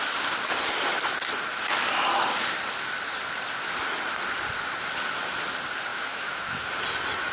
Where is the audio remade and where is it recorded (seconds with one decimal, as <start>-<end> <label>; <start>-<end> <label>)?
0.0-5.9 recorded; 5.9-6.7 remade; 6.7-7.3 recorded